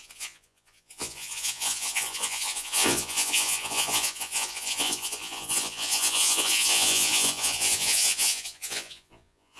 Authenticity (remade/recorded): remade